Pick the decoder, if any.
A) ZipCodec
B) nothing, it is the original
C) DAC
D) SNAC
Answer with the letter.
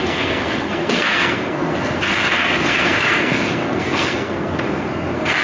D